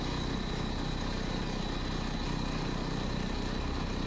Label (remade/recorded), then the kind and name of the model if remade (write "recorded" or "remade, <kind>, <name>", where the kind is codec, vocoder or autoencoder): recorded